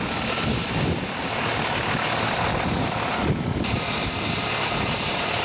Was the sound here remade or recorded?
recorded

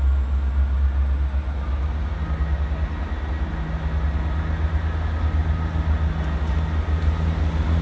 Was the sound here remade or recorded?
recorded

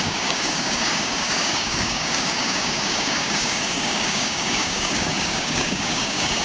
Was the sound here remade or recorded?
remade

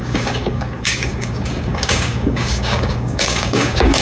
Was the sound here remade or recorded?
remade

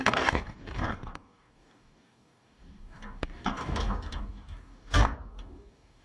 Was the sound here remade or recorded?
remade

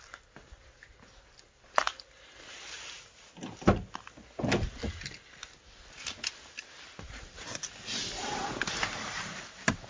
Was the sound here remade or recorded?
recorded